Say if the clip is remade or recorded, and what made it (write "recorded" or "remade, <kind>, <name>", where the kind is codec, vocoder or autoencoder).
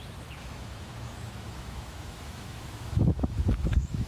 remade, autoencoder, DAC-VAE